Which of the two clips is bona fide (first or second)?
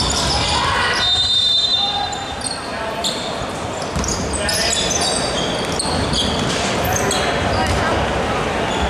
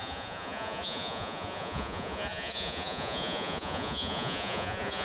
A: first